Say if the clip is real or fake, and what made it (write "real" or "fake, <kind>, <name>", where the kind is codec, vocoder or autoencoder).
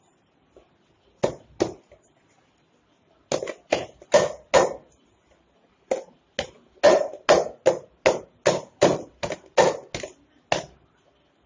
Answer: real